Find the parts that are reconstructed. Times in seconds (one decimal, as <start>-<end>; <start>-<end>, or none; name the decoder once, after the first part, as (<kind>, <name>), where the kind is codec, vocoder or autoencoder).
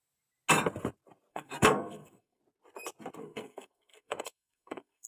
1.3-2.4 (codec, SNAC); 3.2-5.1